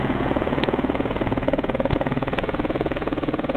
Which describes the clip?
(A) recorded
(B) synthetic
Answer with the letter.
B